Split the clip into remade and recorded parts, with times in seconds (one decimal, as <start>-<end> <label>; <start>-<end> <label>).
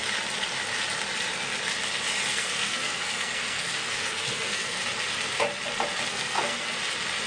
0.0-2.3 recorded; 2.3-4.8 remade; 4.8-6.1 recorded; 6.1-6.8 remade; 6.8-7.3 recorded